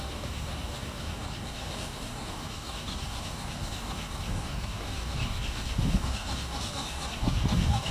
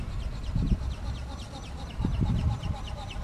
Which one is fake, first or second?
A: first